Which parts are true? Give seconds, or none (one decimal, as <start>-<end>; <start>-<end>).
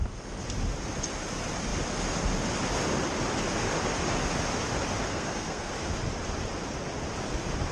0.0-5.1; 5.7-7.7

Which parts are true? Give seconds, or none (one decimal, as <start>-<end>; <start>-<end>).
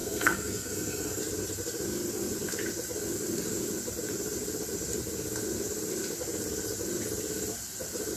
1.2-8.2